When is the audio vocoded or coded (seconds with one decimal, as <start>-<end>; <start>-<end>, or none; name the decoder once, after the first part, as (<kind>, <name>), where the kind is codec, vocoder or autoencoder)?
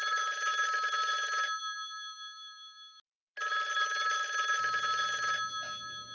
none